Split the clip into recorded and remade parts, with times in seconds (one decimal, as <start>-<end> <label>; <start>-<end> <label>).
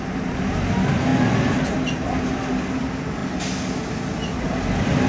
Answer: 0.0-5.1 recorded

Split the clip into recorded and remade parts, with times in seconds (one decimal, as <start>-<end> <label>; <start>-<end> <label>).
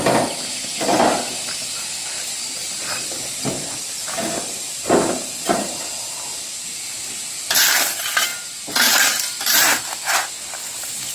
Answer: 0.0-2.6 recorded; 2.6-6.1 remade; 6.1-11.1 recorded